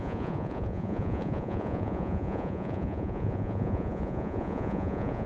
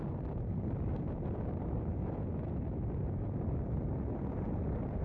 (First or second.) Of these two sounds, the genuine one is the second